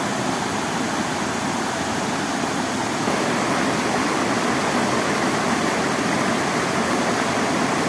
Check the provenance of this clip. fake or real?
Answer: real